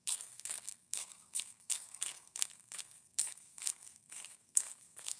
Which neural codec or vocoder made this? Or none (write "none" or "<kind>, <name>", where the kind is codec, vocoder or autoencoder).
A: codec, SNAC